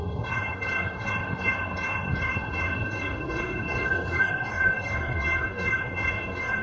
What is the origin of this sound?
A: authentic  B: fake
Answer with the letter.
B